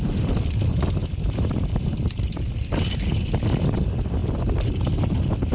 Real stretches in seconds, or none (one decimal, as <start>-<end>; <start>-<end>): 0.0-1.0; 2.4-5.5